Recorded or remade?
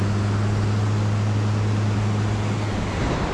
recorded